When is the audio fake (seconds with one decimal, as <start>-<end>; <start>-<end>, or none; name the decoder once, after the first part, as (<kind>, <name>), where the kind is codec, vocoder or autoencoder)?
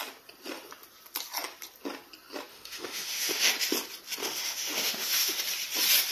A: 2.5-3.5 (autoencoder, DAC-VAE); 4.2-5.4